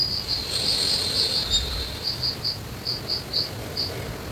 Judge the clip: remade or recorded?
recorded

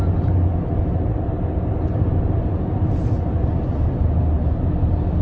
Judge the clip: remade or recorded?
recorded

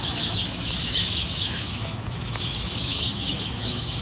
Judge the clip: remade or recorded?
remade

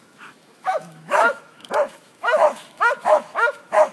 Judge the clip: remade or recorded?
remade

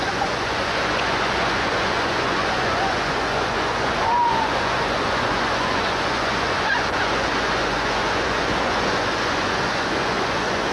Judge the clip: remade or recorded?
remade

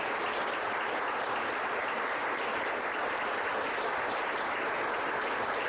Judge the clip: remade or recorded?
recorded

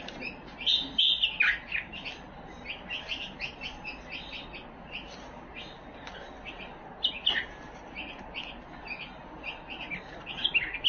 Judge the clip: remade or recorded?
recorded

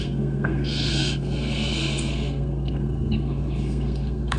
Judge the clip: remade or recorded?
remade